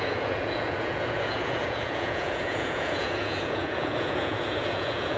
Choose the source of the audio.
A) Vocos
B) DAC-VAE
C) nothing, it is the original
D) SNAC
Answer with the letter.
A